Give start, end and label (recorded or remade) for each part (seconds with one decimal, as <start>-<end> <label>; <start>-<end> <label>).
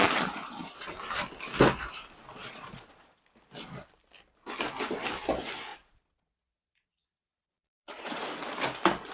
0.0-0.9 remade; 0.9-2.3 recorded; 2.3-3.2 remade; 3.2-5.7 recorded; 5.7-8.2 remade; 8.2-9.1 recorded